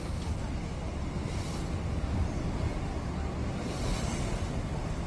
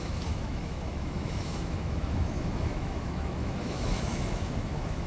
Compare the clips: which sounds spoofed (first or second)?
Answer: second